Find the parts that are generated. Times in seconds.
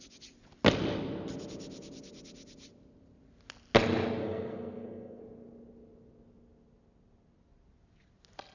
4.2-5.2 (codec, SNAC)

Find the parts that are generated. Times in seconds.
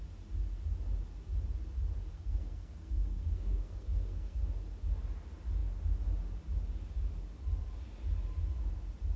2.1-4.4 (codec, SNAC)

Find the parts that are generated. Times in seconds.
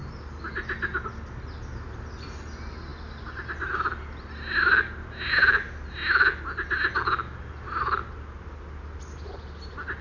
none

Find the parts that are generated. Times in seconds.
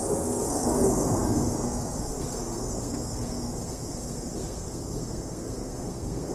0.0-6.3 (codec, SNAC)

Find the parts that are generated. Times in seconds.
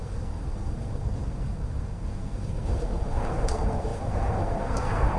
0.0-5.2 (codec, SNAC)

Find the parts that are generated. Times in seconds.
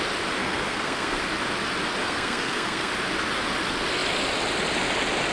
0.4-1.2 (codec, SNAC); 2.0-2.9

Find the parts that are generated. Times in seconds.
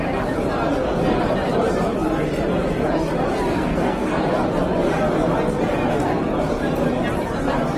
3.5-4.1 (codec, SNAC)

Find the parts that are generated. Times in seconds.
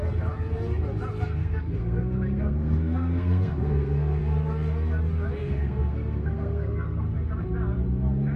1.4-4.2 (codec, SNAC); 5.4-7.0